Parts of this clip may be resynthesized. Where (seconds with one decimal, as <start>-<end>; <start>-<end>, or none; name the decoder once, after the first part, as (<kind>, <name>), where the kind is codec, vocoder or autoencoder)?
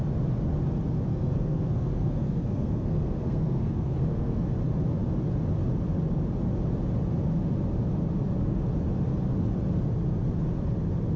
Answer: 1.1-4.5 (codec, SNAC)